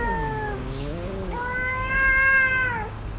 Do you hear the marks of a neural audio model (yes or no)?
yes